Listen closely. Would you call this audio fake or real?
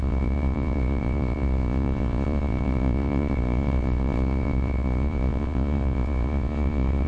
fake